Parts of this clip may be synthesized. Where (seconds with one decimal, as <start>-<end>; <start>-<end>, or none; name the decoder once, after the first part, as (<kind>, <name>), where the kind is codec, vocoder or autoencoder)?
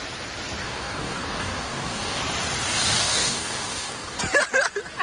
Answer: 0.6-2.2 (codec, DAC); 3.0-4.2